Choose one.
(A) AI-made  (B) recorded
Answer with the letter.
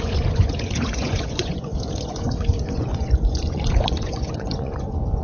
A